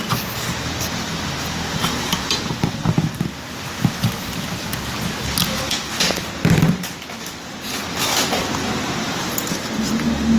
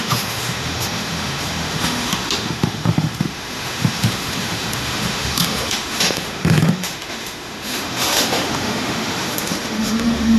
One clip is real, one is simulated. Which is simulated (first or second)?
second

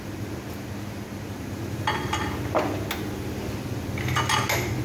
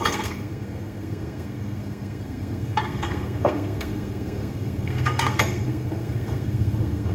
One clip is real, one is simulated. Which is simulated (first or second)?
second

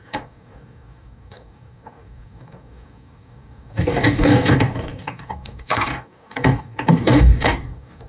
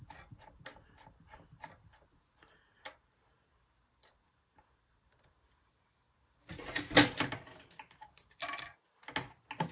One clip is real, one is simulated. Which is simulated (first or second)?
first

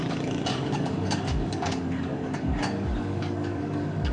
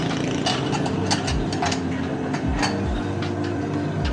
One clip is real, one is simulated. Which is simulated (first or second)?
first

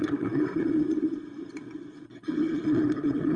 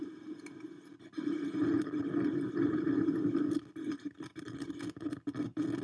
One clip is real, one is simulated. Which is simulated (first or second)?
first